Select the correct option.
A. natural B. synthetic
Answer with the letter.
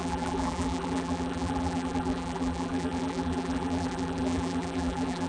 B